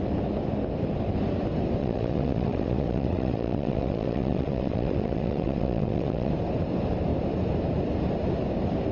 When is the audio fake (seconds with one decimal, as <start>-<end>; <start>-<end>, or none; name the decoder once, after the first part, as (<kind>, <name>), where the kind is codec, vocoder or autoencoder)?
1.8-6.3 (vocoder, WaveNeXt)